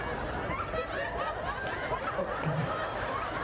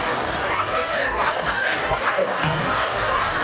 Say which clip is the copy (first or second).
second